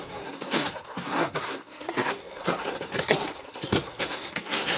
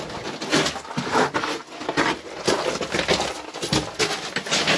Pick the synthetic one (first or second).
first